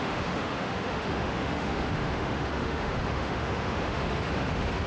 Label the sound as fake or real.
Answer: fake